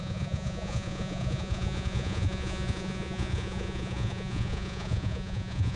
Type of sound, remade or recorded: remade